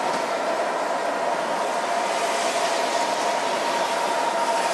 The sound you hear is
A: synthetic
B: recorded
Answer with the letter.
B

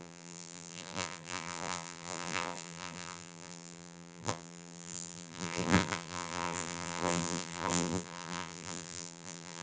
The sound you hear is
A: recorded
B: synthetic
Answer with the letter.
B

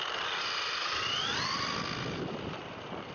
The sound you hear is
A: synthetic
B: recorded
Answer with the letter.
A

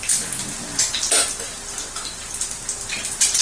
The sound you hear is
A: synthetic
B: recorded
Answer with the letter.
B